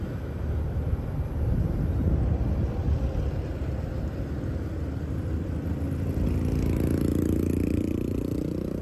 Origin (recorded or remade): recorded